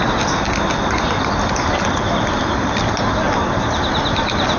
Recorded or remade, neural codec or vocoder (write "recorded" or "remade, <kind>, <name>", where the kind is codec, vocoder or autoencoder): recorded